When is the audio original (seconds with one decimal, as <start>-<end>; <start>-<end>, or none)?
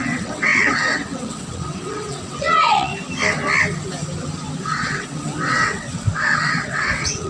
2.9-4.6